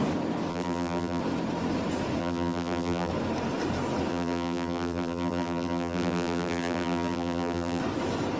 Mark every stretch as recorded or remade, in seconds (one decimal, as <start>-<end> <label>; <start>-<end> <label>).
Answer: 0.0-0.5 recorded; 0.5-1.2 remade; 1.2-2.2 recorded; 2.2-3.1 remade; 3.1-4.1 recorded; 4.1-7.8 remade; 7.8-8.4 recorded